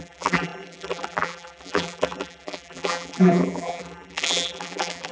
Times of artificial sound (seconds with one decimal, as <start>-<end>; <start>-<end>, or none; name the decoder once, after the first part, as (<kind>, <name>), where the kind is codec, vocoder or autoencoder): 0.0-5.1 (vocoder, BigVGAN v2)